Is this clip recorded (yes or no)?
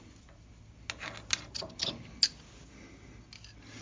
yes